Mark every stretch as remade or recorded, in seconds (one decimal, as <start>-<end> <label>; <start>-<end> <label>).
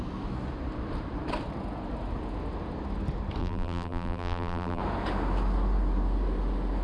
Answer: 0.0-3.4 recorded; 3.4-4.8 remade; 4.8-6.8 recorded